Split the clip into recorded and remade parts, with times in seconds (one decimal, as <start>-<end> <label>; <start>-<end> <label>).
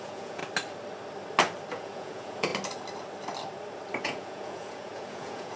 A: 0.0-0.4 remade; 0.4-1.7 recorded; 1.7-2.5 remade; 2.5-4.0 recorded; 4.0-5.6 remade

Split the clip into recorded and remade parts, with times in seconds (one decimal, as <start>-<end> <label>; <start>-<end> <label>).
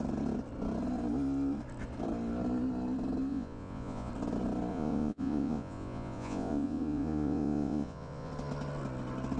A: 0.0-3.3 recorded; 3.3-4.1 remade; 4.1-4.7 recorded; 4.7-8.3 remade; 8.3-9.4 recorded